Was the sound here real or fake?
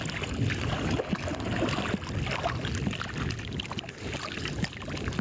real